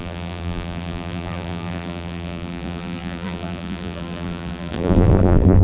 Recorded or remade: remade